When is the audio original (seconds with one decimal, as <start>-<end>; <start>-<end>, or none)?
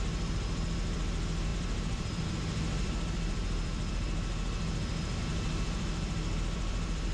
none